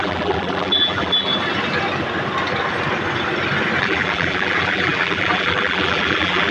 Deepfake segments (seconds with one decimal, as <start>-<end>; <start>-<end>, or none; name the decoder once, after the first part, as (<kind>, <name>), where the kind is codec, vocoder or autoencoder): 0.0-1.3 (vocoder, BigVGAN v2); 3.8-6.5